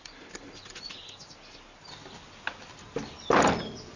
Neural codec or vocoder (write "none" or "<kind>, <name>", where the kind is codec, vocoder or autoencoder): none